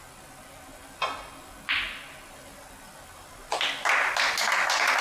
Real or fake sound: real